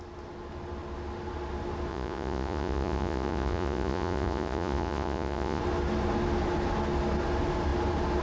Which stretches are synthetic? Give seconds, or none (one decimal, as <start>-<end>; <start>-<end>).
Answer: 1.9-5.6